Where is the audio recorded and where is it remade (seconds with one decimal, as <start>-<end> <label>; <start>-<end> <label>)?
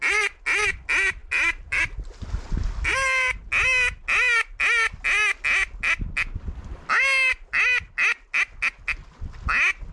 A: 0.0-1.2 recorded; 1.2-1.8 remade; 1.8-9.9 recorded